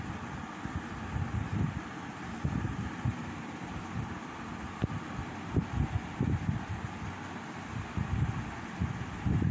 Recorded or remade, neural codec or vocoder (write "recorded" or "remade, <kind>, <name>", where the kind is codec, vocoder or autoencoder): recorded